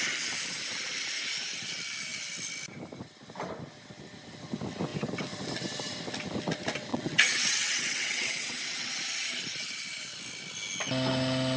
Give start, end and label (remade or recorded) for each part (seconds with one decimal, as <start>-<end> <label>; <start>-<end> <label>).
0.0-6.9 recorded; 6.9-8.9 remade; 8.9-11.6 recorded